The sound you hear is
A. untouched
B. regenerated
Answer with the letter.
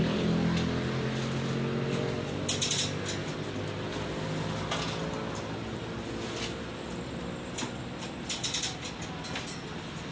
A